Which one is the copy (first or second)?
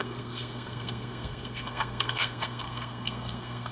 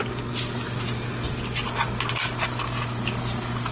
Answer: first